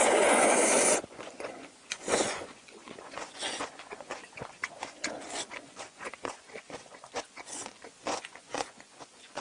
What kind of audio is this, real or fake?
fake